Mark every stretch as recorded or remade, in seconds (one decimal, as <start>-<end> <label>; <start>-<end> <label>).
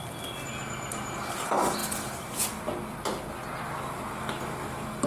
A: 0.0-5.1 recorded